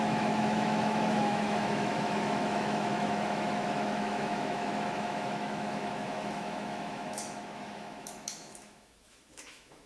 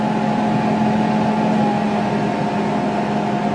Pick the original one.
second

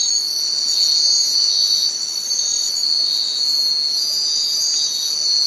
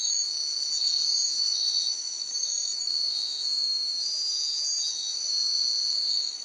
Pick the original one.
first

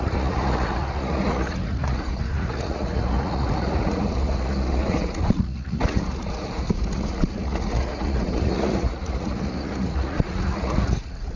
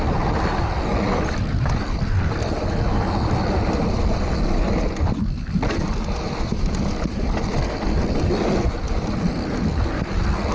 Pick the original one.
second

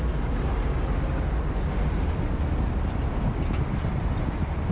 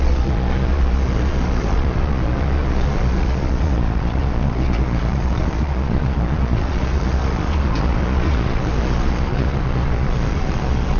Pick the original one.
first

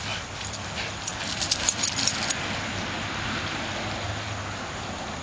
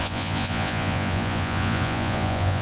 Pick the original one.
first